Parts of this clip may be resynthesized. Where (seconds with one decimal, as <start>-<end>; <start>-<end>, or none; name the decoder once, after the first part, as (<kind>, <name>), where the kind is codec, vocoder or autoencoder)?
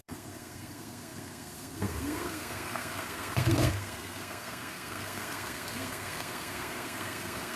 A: 0.0-7.6 (codec, SNAC)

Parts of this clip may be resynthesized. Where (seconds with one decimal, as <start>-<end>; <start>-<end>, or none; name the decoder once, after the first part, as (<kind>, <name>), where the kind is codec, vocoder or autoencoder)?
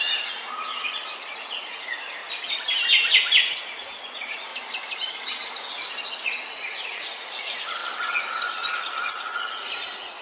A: 0.0-2.2 (vocoder, Vocos); 3.9-4.5; 6.0-7.8; 8.5-10.2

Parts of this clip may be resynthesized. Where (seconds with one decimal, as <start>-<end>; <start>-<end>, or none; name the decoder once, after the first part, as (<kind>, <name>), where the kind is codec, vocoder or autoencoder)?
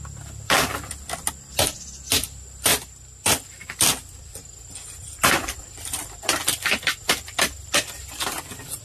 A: none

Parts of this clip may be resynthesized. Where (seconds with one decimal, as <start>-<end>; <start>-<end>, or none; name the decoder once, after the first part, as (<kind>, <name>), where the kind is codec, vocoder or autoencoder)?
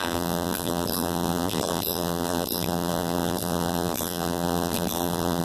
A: 0.0-5.4 (vocoder, BigVGAN v2)